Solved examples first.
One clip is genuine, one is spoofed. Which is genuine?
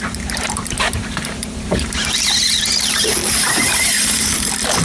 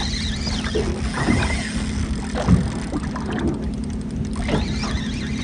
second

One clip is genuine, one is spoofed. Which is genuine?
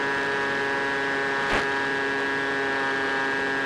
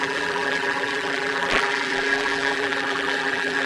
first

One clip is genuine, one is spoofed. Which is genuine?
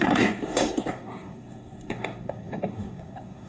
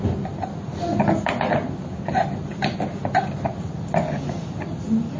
second